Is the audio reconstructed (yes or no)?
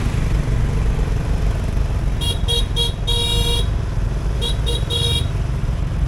no